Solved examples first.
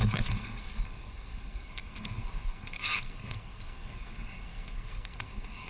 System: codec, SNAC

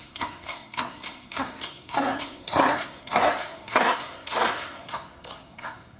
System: codec, SNAC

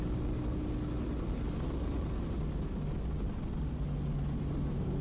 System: none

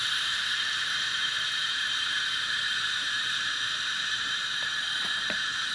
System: vocoder, BigVGAN v2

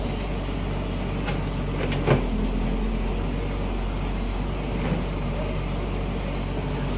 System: none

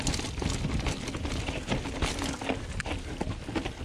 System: none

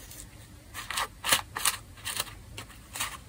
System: none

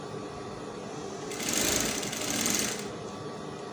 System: none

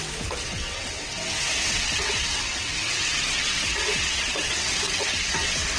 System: vocoder, WaveNeXt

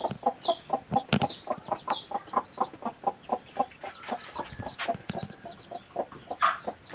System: none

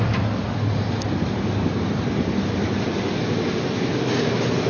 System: vocoder, BigVGAN v2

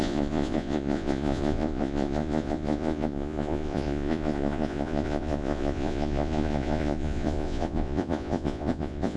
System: vocoder, Vocos